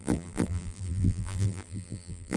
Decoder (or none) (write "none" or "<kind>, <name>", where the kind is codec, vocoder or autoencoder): vocoder, BigVGAN v2